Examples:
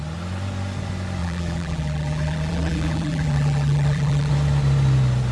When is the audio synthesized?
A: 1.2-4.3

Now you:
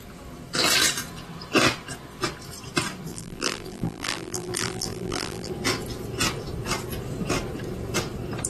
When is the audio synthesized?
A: 3.1-5.5

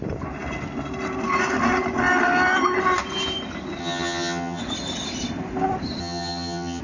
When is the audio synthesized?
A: 3.8-4.6; 6.0-6.8

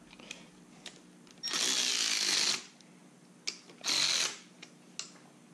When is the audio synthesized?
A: none

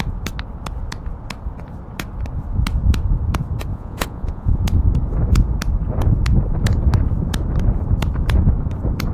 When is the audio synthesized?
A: 3.7-4.6